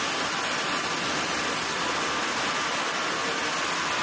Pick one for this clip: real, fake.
real